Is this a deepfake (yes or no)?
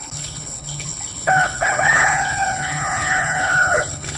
yes